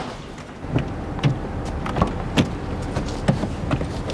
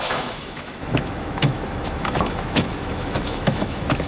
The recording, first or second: first